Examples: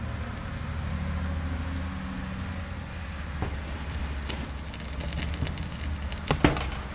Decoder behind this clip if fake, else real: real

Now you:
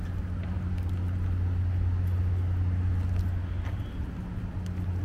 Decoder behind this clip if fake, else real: real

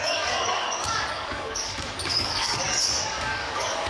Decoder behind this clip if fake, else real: fake, codec, DAC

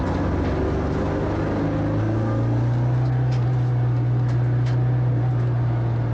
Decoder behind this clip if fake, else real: real